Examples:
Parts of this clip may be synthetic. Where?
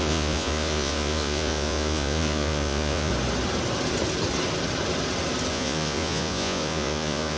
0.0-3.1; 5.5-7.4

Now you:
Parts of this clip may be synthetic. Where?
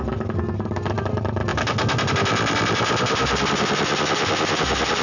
none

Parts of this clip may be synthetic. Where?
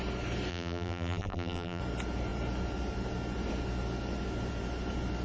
0.5-1.8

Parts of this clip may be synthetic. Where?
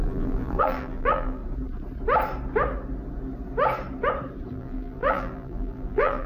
0.0-1.4; 4.5-6.3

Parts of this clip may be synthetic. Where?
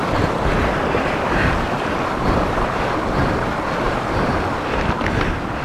0.5-3.2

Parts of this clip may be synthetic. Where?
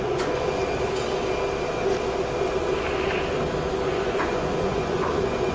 0.0-0.6; 3.9-5.5